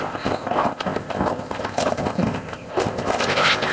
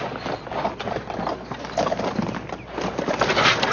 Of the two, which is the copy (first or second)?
first